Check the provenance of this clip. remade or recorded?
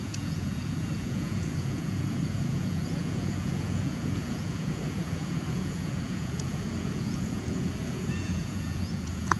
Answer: remade